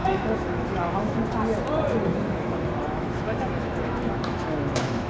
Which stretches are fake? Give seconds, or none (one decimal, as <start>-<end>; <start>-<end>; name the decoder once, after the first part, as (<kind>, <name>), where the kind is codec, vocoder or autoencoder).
0.0-1.2 (autoencoder, DAC-VAE); 2.1-5.1